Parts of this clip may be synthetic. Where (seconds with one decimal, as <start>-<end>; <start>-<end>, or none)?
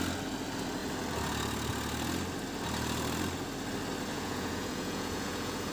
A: 4.1-5.7